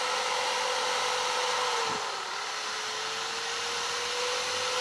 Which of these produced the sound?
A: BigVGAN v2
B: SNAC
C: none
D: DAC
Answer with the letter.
C